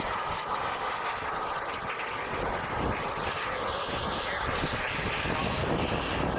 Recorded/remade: recorded